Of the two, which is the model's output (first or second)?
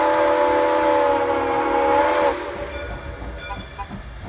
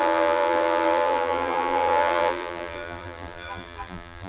second